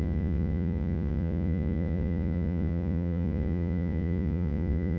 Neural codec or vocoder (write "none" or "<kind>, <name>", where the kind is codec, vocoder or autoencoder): vocoder, Vocos